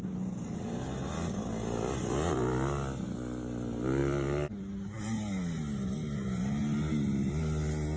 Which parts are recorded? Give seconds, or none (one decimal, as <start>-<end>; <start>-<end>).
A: 0.0-8.0